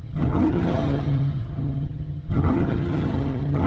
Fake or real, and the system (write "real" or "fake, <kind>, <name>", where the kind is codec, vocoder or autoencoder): fake, vocoder, HiFi-GAN